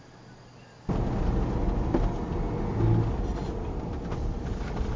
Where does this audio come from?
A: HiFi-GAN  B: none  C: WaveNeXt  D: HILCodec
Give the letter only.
B